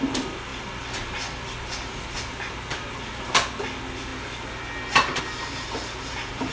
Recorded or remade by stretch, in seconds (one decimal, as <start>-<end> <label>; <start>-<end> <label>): 0.0-6.5 recorded